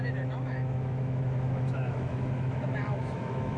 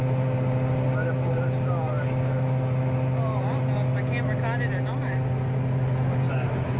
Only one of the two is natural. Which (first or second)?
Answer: second